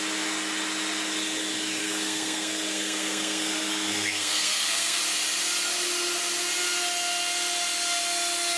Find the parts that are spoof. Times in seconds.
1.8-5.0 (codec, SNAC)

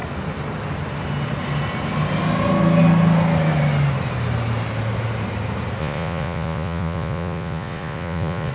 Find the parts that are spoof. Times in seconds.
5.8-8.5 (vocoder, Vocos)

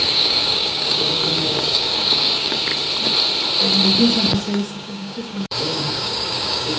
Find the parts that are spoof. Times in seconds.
0.0-2.7 (codec, DAC); 4.4-6.8

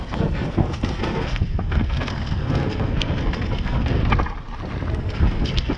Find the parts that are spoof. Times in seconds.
0.0-4.0 (codec, SNAC); 4.9-5.8